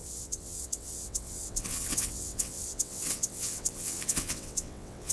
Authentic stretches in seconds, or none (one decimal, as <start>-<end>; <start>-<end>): none